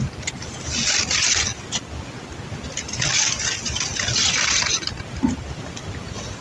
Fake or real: real